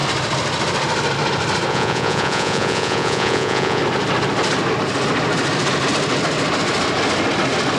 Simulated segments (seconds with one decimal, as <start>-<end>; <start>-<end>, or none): 1.7-3.8